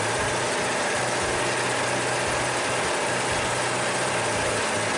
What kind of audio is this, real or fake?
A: real